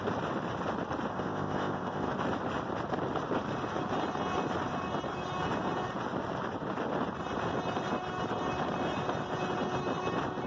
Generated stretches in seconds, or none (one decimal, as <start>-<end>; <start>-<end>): 1.1-2.1